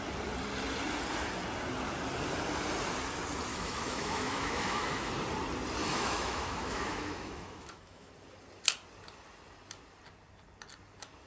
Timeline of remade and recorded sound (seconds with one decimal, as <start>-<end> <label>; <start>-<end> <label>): 0.0-3.5 recorded; 3.5-5.1 remade; 5.1-5.8 recorded; 5.8-8.1 remade; 8.1-11.3 recorded